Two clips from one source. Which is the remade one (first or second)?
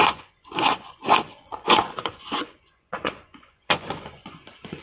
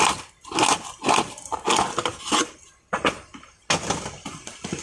first